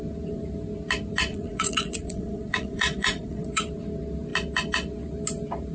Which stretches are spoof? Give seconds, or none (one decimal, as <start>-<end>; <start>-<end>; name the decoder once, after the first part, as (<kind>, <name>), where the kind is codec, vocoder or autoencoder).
1.3-3.6 (vocoder, Vocos)